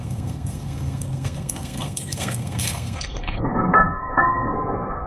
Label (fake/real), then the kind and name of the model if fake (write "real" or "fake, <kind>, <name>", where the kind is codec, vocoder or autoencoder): fake, codec, SNAC